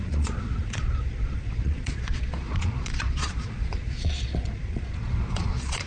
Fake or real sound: fake